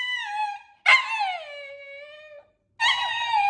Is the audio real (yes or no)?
yes